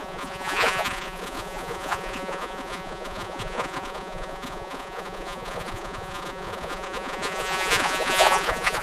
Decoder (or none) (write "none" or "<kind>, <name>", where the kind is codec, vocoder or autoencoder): vocoder, Vocos